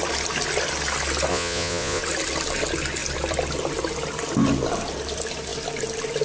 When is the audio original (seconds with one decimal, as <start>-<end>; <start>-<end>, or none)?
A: 0.0-1.3; 2.0-6.2